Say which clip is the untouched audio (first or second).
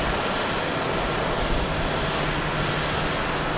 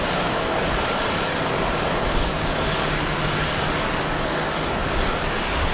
first